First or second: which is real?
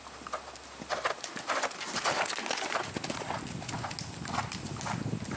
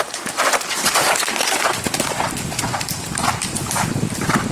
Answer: first